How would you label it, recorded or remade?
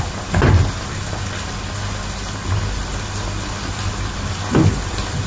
recorded